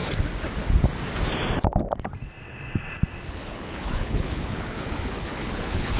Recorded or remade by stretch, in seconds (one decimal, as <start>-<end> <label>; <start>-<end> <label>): 0.0-3.3 recorded; 3.3-6.0 remade

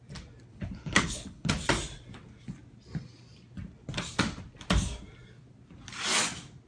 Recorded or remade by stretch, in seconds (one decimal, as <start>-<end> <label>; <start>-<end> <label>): 0.0-0.5 recorded; 0.5-1.5 remade; 1.5-6.7 recorded

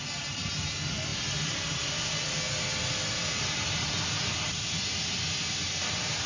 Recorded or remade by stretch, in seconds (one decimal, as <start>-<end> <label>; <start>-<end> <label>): 0.0-6.3 recorded

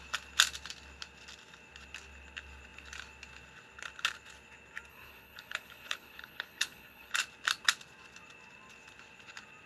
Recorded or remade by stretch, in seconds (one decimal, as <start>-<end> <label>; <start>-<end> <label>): 0.0-4.9 recorded; 4.9-7.1 remade; 7.1-9.7 recorded

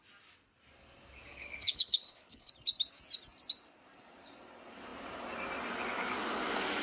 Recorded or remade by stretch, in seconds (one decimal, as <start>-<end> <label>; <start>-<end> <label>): 0.0-1.3 recorded; 1.3-2.5 remade; 2.5-6.8 recorded

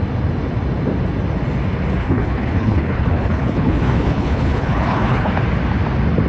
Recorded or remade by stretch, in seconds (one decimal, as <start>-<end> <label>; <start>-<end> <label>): 0.0-2.0 recorded; 2.0-5.3 remade; 5.3-6.3 recorded

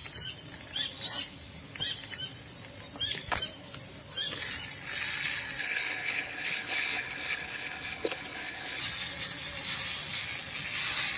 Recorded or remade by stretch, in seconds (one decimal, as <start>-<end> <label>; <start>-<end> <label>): 0.0-5.6 recorded; 5.6-8.8 remade; 8.8-11.2 recorded